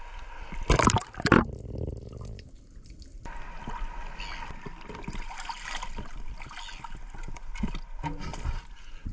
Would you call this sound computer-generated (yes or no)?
no